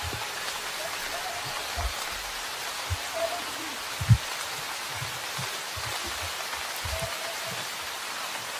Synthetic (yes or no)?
no